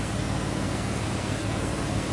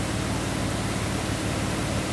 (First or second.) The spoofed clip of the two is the first